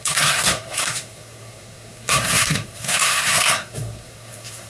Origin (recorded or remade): remade